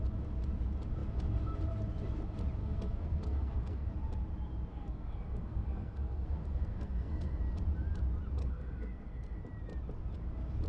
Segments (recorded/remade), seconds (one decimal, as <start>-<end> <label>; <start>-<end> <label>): 0.0-2.6 recorded; 2.6-3.9 remade; 3.9-4.7 recorded; 4.7-7.4 remade; 7.4-8.4 recorded; 8.4-9.4 remade; 9.4-10.7 recorded

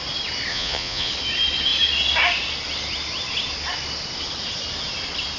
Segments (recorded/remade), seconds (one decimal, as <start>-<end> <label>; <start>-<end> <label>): 0.0-0.5 recorded; 0.5-1.1 remade; 1.1-5.4 recorded

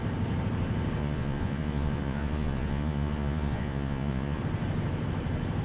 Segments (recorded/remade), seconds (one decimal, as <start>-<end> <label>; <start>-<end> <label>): 0.0-1.0 recorded; 1.0-4.4 remade; 4.4-5.6 recorded

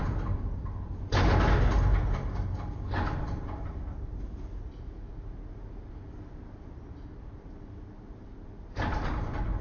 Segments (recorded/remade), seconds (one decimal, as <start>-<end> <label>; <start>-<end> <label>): 0.0-9.6 recorded

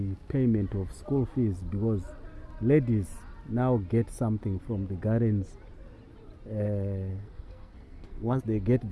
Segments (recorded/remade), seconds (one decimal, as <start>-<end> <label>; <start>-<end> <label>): 0.0-7.1 recorded; 7.1-8.4 remade; 8.4-8.9 recorded

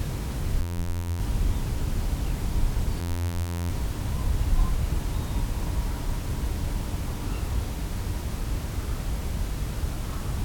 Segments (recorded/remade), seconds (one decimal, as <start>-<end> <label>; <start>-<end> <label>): 0.0-0.6 recorded; 0.6-1.2 remade; 1.2-3.0 recorded; 3.0-3.7 remade; 3.7-10.4 recorded

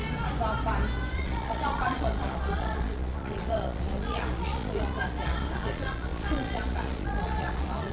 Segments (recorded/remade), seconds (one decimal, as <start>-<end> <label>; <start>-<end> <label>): 0.0-1.1 recorded; 1.1-7.9 remade